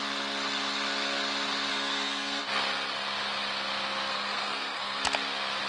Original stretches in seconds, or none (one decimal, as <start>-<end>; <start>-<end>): 0.0-1.7; 2.4-4.1; 5.0-5.7